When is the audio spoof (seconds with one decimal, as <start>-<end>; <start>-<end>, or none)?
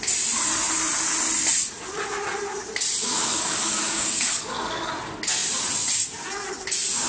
3.0-4.9